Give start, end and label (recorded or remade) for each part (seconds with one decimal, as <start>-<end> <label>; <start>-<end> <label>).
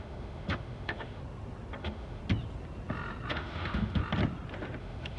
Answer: 0.0-1.2 remade; 1.2-1.8 recorded; 1.8-2.2 remade; 2.2-3.3 recorded; 3.3-4.0 remade; 4.0-4.8 recorded; 4.8-5.2 remade